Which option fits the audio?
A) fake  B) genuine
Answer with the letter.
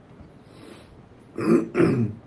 B